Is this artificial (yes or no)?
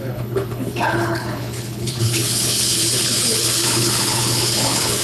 yes